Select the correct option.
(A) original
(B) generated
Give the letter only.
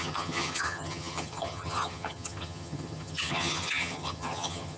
B